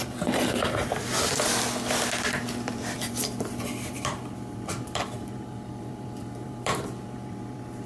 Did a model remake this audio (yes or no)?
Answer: yes